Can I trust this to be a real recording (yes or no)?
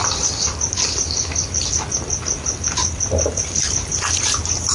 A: no